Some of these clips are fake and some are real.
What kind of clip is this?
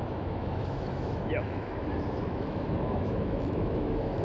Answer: fake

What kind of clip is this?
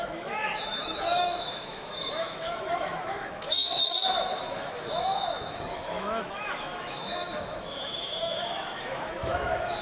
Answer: fake